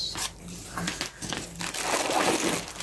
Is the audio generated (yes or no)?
no